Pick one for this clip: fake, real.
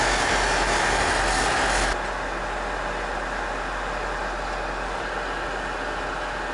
real